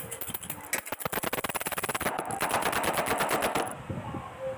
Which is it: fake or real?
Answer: real